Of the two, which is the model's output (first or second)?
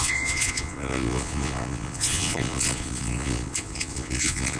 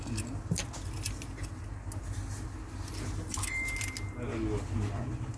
first